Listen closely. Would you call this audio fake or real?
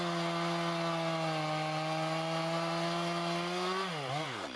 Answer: real